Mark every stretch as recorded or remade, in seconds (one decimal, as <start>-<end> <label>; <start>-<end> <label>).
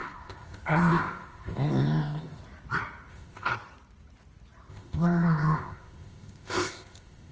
0.0-2.4 remade; 2.4-3.1 recorded; 3.1-3.5 remade; 3.5-4.7 recorded; 4.7-7.3 remade